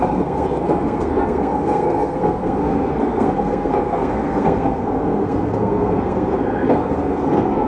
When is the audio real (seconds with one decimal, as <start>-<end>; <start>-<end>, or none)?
none